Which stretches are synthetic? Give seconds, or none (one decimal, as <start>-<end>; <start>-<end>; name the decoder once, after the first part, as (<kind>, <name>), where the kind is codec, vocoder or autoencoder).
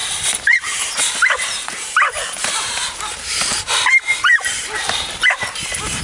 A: 0.0-6.0 (vocoder, BigVGAN v2)